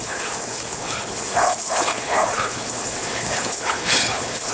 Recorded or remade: remade